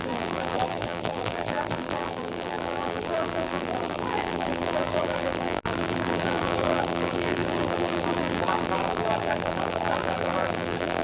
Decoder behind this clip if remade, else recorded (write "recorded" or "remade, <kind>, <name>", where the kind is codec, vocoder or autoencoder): remade, vocoder, BigVGAN v2